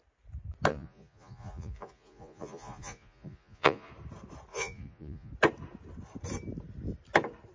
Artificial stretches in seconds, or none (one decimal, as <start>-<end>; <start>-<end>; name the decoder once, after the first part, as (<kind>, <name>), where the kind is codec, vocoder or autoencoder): 0.7-3.9 (vocoder, Vocos); 4.5-5.3